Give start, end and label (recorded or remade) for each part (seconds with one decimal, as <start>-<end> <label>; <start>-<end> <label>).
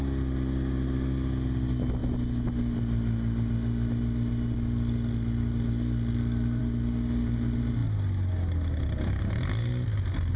0.0-10.4 recorded